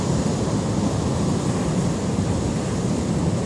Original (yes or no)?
yes